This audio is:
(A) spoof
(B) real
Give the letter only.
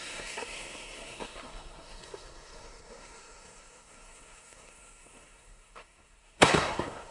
A